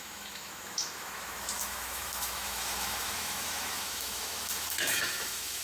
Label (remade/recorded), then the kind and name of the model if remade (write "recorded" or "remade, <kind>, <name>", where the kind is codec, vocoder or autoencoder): remade, autoencoder, DAC-VAE